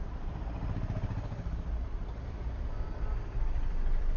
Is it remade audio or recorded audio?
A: remade